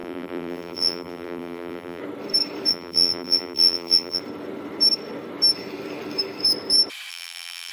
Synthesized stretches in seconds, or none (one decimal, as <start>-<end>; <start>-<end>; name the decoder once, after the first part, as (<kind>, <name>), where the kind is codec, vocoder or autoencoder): 0.0-2.0 (vocoder, BigVGAN v2); 2.7-4.2; 7.1-7.7

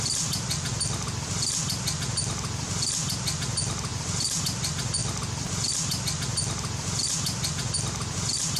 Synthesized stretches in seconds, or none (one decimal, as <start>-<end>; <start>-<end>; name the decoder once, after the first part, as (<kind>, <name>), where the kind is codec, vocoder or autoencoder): 3.9-4.4 (vocoder, BigVGAN v2)

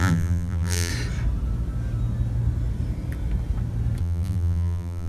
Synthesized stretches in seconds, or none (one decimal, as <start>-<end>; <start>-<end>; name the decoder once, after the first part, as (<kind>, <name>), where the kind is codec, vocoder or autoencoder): 0.0-0.9 (vocoder, BigVGAN v2); 4.0-5.1